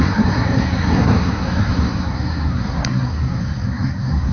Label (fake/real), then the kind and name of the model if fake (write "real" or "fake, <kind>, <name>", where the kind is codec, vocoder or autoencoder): fake, codec, SNAC